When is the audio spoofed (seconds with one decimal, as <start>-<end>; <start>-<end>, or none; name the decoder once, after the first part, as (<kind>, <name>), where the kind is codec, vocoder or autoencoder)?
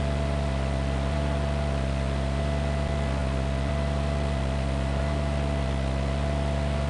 none